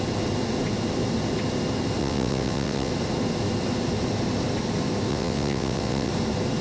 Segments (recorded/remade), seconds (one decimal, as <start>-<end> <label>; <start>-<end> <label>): 0.0-2.0 recorded; 2.0-2.9 remade; 2.9-5.1 recorded; 5.1-6.1 remade; 6.1-6.6 recorded

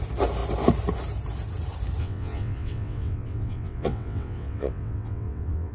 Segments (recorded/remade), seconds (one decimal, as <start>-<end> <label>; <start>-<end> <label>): 0.0-2.0 recorded; 2.0-5.7 remade

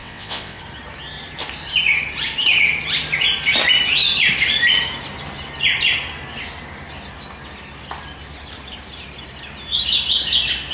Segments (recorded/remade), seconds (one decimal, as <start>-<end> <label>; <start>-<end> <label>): 0.0-0.6 remade; 0.6-10.7 recorded

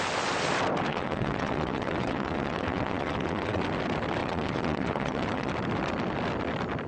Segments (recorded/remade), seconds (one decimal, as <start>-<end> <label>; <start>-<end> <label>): 0.0-0.9 recorded; 0.9-3.6 remade; 3.6-4.2 recorded; 4.2-5.5 remade; 5.5-6.9 recorded